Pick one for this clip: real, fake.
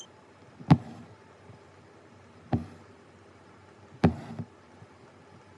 real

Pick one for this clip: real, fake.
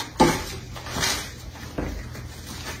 real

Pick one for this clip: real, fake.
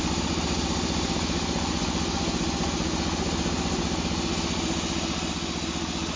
real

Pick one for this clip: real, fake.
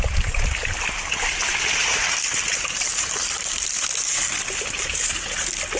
real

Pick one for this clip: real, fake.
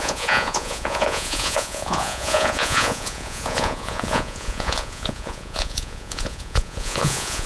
fake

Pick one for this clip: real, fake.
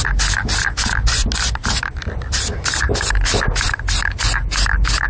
real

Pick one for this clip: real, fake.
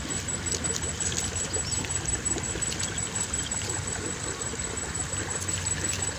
real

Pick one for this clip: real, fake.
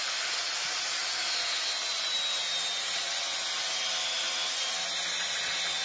real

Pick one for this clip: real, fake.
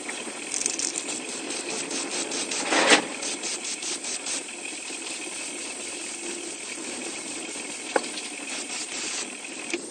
real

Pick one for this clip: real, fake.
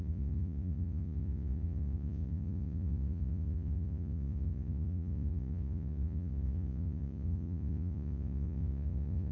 fake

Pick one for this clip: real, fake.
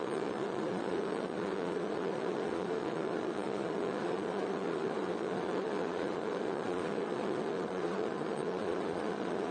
fake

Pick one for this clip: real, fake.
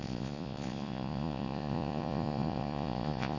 fake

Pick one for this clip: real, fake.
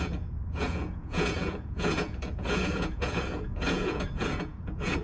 fake